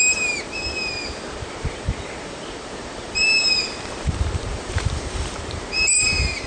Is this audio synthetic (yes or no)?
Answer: yes